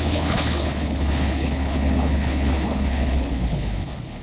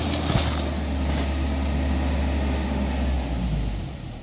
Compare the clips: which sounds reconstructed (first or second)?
first